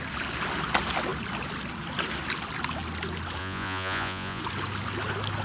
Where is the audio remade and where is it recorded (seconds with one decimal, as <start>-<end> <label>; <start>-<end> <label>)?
0.0-3.4 recorded; 3.4-4.4 remade; 4.4-5.4 recorded